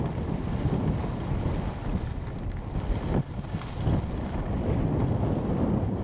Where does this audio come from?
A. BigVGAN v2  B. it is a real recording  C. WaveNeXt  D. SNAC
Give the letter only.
B